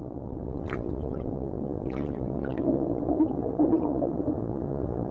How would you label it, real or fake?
fake